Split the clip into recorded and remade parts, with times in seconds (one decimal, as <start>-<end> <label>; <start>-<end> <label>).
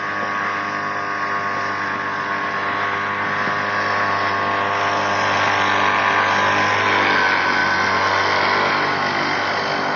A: 0.0-10.0 recorded